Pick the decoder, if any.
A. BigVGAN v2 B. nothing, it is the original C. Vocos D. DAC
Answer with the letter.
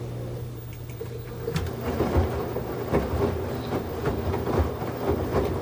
B